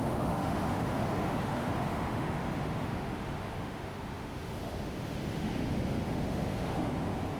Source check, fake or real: fake